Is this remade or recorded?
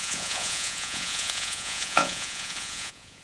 remade